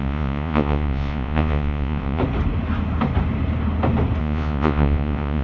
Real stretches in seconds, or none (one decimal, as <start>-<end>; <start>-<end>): 2.2-4.2